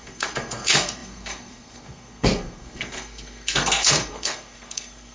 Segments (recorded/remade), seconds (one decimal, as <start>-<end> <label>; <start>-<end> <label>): 0.0-5.1 remade